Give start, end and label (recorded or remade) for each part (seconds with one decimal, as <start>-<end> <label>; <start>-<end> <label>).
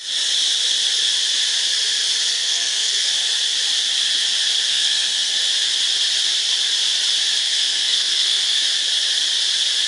0.0-2.3 recorded; 2.3-3.1 remade; 3.1-4.7 recorded; 4.7-5.3 remade; 5.3-7.4 recorded; 7.4-8.6 remade; 8.6-9.9 recorded